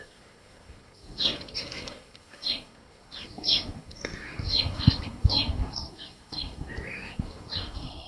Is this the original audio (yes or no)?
no